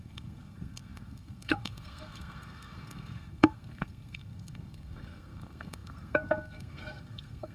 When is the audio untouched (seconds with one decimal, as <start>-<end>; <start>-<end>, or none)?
none